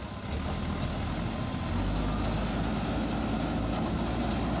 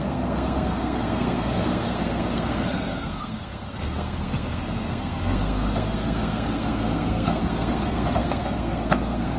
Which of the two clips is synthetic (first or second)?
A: second